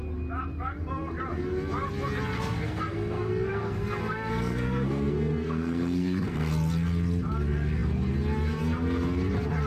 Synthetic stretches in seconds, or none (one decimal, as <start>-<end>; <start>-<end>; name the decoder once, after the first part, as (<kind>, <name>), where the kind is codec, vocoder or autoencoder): 2.3-6.5 (codec, SNAC)